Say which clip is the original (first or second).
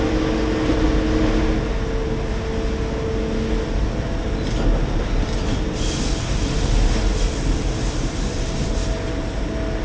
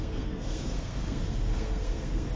first